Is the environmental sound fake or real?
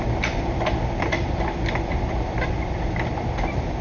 real